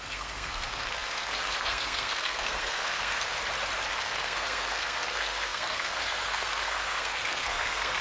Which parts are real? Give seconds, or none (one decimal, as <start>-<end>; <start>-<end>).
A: 3.4-3.9